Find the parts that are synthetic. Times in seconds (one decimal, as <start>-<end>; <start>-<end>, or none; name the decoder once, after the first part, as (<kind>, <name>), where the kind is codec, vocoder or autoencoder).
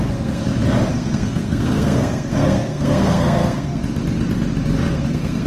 0.0-0.4 (codec, SNAC); 0.9-3.8; 4.9-5.5